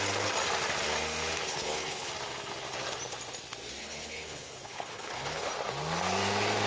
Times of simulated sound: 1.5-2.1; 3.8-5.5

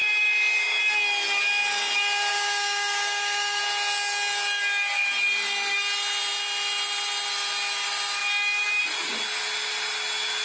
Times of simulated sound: 0.0-0.8; 2.3-3.6

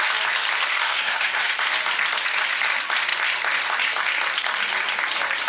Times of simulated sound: 0.7-1.5

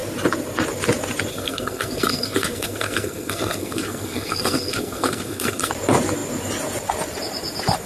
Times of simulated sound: 1.3-5.7